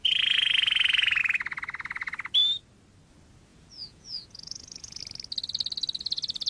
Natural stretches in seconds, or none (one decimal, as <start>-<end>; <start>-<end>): 1.2-3.5; 5.0-6.5